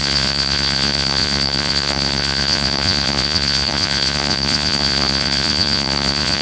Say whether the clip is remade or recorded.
remade